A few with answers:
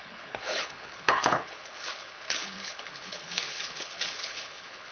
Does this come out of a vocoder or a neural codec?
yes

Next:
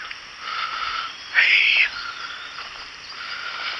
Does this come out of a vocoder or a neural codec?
no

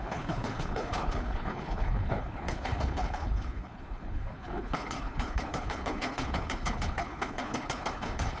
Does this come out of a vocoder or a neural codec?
yes